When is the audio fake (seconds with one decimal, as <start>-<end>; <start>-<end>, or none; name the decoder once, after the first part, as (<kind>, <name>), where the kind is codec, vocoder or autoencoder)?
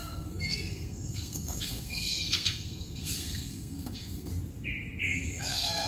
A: 0.0-4.3 (codec, SNAC); 5.0-5.9